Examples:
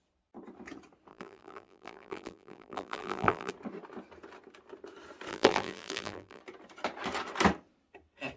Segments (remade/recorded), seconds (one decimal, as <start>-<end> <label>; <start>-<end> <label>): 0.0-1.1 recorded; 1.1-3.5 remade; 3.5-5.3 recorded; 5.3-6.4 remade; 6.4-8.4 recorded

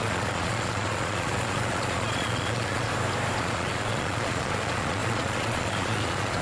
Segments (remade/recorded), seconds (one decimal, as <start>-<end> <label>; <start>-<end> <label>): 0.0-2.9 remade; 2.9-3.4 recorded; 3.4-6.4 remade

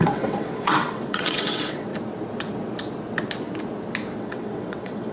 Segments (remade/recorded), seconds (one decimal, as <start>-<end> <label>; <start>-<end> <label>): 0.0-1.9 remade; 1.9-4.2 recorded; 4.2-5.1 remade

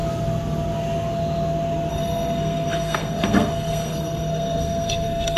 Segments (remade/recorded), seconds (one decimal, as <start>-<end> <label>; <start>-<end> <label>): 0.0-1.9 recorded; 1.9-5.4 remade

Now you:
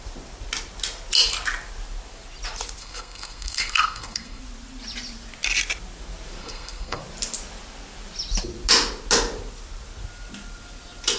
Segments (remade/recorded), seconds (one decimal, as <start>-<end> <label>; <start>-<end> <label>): 0.0-2.8 recorded; 2.8-4.4 remade; 4.4-6.4 recorded; 6.4-7.0 remade; 7.0-11.2 recorded